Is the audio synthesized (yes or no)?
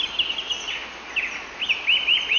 no